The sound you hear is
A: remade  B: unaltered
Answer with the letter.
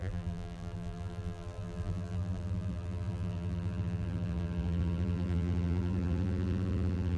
A